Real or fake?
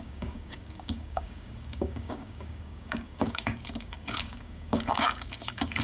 fake